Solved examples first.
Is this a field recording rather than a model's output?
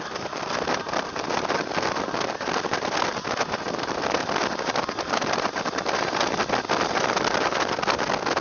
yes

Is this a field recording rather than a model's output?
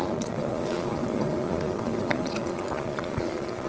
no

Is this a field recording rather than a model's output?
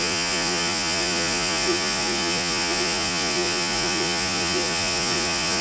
no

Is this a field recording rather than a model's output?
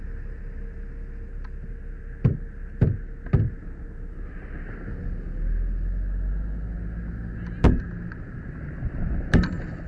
yes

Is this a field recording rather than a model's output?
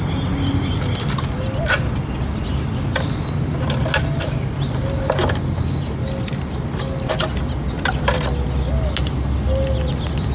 yes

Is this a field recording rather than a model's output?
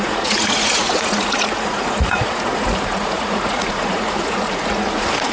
no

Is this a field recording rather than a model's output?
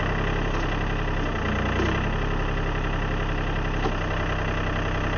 yes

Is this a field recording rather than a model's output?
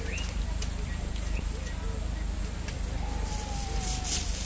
yes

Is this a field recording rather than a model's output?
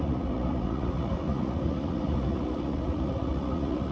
no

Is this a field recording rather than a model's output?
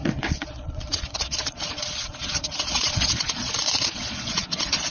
no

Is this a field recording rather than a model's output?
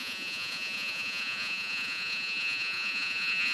no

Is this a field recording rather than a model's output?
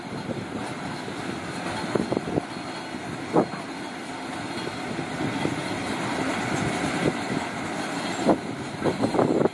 yes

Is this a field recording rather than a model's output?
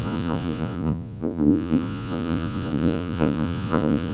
no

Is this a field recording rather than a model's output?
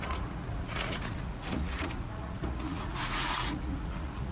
no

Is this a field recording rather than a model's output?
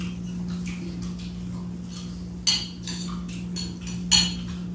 yes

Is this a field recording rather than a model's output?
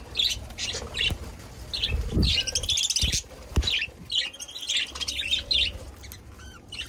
yes